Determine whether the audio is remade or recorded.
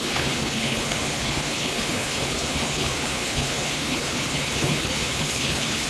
remade